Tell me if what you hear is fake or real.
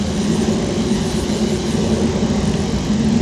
real